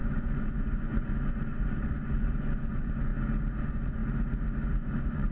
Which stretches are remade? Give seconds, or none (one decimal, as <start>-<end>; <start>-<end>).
0.0-3.1; 3.6-4.0; 4.6-5.3